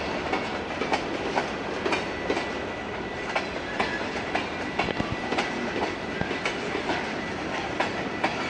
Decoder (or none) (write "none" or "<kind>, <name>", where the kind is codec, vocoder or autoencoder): none